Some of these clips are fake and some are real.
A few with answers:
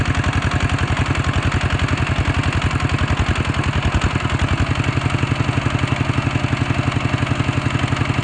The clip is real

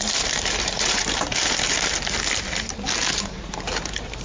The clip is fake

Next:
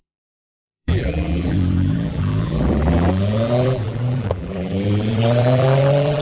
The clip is fake